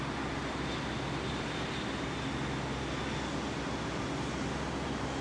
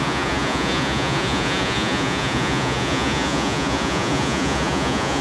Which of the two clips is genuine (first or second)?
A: first